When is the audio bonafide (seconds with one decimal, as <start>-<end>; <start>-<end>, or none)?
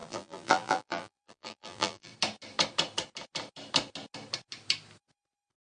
2.1-5.6